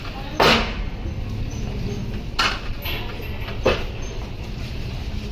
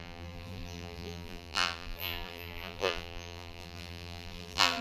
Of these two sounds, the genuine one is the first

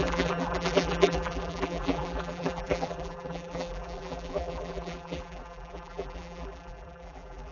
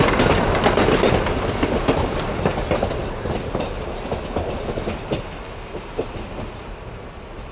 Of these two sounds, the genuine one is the second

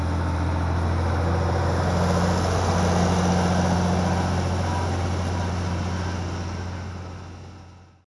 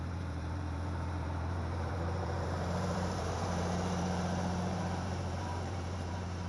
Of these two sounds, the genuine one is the first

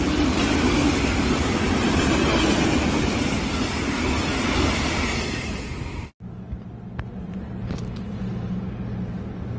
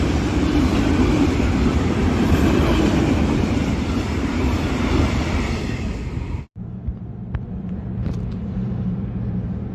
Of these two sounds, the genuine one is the first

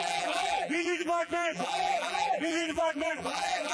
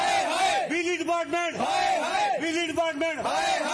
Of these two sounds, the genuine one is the second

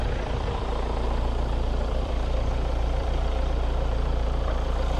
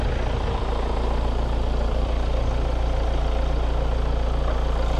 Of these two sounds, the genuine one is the second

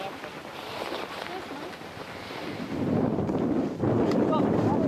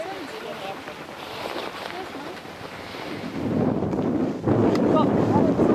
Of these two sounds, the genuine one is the second